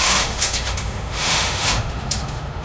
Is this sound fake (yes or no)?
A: yes